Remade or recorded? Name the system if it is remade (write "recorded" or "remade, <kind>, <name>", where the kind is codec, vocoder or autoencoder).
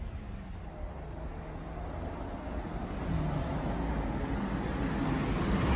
recorded